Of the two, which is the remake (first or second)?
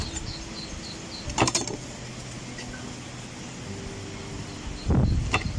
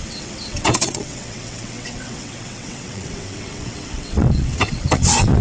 second